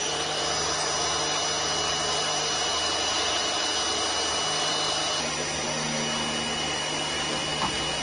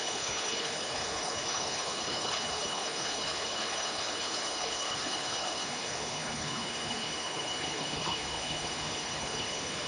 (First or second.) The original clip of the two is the first